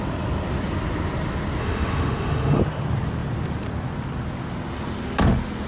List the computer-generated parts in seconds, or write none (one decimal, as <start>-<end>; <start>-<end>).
1.6-2.6